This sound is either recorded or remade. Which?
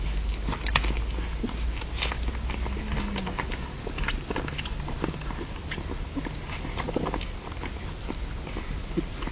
recorded